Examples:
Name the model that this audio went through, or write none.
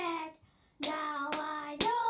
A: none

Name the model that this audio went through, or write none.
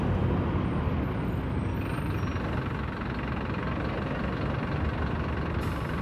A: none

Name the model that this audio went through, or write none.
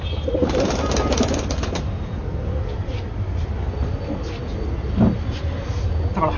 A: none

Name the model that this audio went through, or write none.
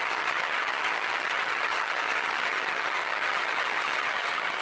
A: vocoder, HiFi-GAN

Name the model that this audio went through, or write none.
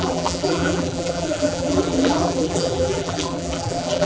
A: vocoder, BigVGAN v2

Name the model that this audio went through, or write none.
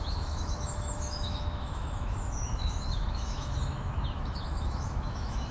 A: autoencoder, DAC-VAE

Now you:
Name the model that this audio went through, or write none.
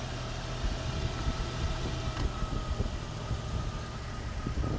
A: none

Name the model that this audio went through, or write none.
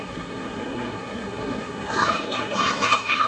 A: codec, SNAC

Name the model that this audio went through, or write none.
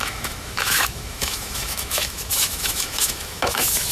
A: autoencoder, DAC-VAE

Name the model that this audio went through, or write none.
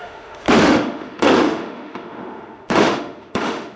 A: autoencoder, DAC-VAE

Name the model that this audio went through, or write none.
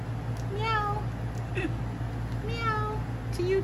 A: none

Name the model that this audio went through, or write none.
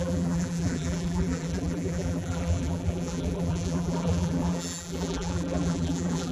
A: vocoder, BigVGAN v2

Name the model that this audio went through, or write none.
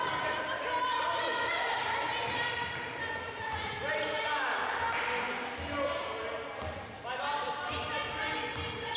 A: none